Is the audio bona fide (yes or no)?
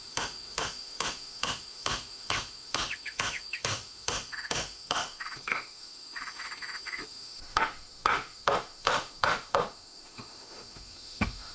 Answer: no